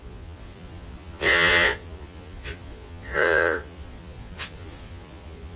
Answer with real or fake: fake